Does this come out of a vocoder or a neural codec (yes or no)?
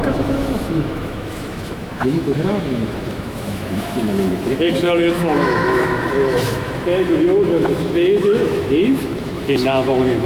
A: yes